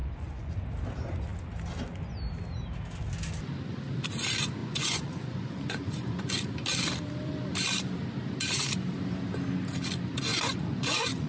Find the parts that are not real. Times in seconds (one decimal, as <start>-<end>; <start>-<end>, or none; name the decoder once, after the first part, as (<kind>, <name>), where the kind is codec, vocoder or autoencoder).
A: 0.0-0.5 (vocoder, Vocos); 4.6-6.2; 10.3-11.3